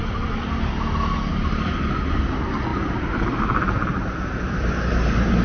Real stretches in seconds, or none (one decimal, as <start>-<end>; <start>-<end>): 0.7-1.3; 1.9-2.7; 3.4-3.9; 4.9-5.4